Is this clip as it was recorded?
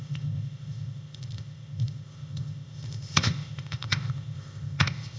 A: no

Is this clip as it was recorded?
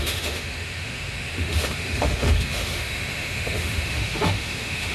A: no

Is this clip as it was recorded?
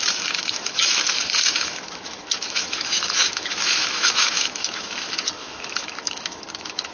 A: no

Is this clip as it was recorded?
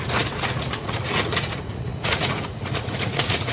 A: no